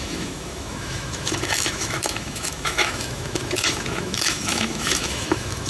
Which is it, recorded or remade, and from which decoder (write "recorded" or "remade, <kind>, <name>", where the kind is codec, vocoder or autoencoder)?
remade, autoencoder, DAC-VAE